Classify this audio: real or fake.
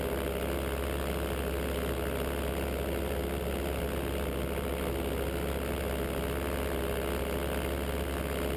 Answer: real